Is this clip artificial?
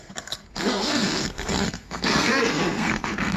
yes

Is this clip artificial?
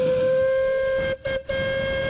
no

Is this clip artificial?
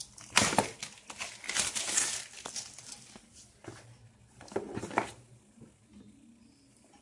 no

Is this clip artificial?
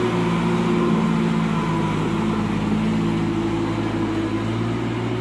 no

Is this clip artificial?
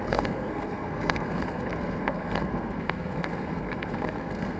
yes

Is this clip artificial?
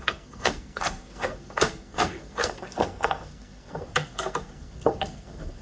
yes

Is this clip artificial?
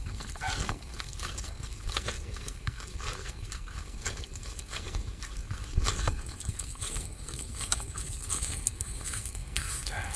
yes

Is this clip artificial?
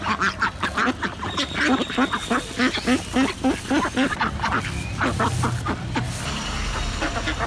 no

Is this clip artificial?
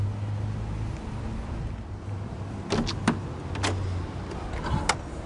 no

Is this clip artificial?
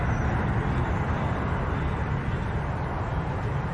no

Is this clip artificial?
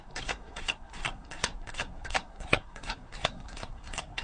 yes